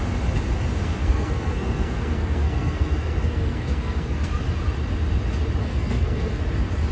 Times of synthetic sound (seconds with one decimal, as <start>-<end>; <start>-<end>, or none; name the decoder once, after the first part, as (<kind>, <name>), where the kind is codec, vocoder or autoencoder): 0.8-4.3 (codec, SNAC); 5.6-6.4